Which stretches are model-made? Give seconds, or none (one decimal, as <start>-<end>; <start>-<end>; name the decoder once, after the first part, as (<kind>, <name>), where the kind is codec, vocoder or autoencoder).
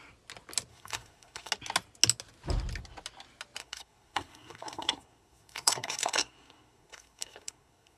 0.7-1.5 (codec, SNAC); 3.6-8.0